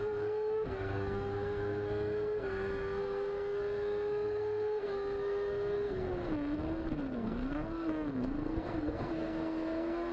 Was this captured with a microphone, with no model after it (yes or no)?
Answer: no